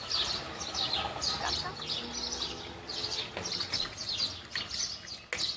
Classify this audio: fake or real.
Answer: real